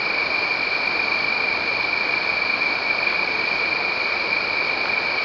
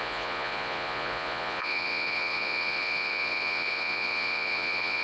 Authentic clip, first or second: first